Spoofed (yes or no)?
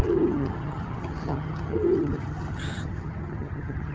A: yes